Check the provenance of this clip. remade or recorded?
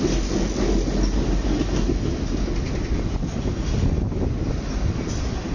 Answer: recorded